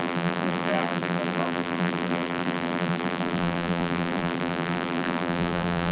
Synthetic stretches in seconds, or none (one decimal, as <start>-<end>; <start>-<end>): 0.0-5.9